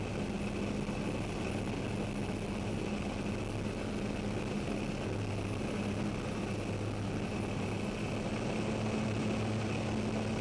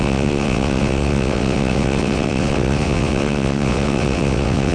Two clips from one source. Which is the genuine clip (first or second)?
first